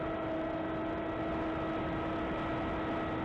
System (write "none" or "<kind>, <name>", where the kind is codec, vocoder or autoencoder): none